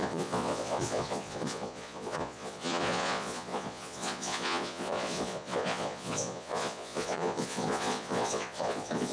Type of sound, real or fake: fake